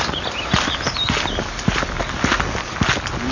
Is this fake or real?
real